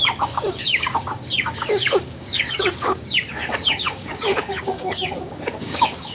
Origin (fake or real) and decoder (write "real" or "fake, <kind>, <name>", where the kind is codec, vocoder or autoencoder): fake, codec, DAC